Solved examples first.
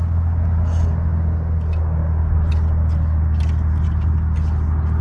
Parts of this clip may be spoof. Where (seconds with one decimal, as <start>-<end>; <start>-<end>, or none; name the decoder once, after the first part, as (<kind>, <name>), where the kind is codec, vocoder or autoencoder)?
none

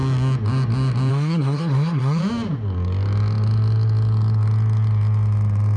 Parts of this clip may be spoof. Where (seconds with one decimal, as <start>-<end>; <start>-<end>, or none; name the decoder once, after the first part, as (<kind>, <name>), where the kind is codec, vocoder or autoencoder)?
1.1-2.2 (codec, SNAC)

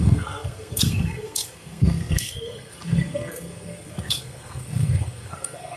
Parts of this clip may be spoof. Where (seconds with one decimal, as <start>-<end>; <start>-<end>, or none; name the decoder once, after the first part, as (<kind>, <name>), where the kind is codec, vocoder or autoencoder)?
0.0-5.8 (codec, SNAC)

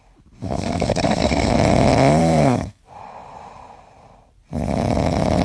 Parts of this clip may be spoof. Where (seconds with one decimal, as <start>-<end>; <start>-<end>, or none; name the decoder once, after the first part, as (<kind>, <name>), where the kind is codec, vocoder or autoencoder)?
0.4-1.5 (codec, SNAC); 2.2-2.8